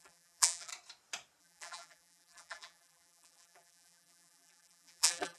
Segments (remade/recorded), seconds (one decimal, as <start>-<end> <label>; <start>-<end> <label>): 0.0-0.7 remade; 0.7-1.4 recorded; 1.4-5.4 remade